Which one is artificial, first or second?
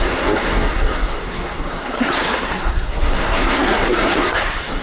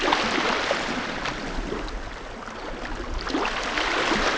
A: first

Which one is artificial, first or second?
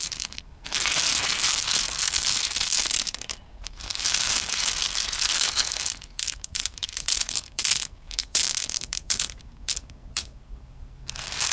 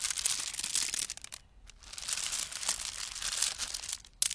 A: first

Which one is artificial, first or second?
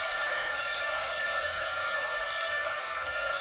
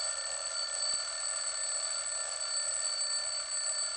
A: first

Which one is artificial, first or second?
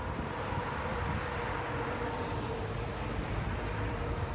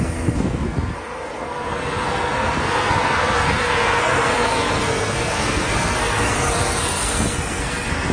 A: second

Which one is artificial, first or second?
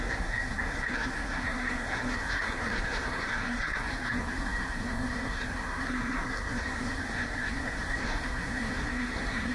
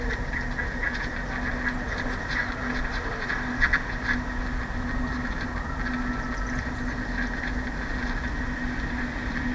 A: first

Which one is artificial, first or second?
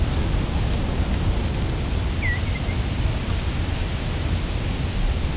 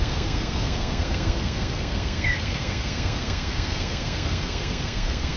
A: second